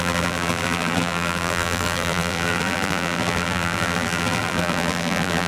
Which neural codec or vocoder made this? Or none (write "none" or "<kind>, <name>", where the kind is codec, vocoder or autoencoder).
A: vocoder, BigVGAN v2